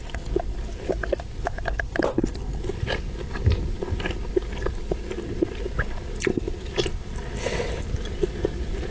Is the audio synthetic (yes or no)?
yes